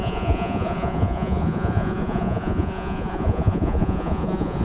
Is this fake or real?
fake